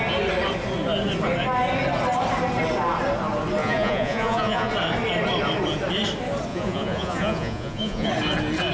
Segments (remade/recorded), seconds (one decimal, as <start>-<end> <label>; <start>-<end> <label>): 0.0-3.6 recorded; 3.6-4.7 remade; 4.7-6.5 recorded; 6.5-8.1 remade; 8.1-8.7 recorded